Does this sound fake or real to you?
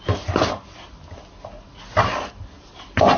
real